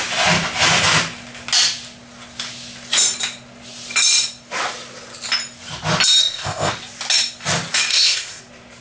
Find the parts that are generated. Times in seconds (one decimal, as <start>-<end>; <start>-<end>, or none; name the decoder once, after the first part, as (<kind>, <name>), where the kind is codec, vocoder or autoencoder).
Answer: 6.2-6.7 (codec, ZipCodec); 7.9-8.4